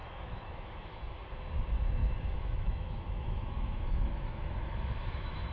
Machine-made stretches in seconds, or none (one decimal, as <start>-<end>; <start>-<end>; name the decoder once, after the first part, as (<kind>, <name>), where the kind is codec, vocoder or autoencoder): 0.0-1.0 (autoencoder, DAC-VAE); 2.0-5.5

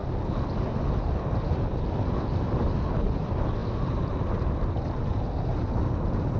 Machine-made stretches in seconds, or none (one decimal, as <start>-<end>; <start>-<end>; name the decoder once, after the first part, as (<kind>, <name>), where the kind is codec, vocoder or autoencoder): none